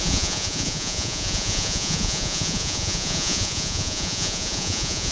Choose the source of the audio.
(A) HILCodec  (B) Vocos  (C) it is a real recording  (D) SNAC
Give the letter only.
B